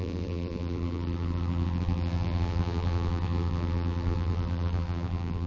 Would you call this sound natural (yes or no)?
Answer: no